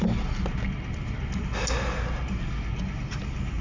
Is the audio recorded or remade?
recorded